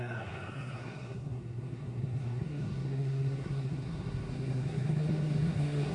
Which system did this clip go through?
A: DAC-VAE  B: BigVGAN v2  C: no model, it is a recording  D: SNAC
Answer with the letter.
D